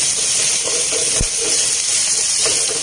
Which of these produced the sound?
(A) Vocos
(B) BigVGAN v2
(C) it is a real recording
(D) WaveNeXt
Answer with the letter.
B